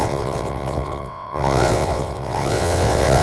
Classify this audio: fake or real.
fake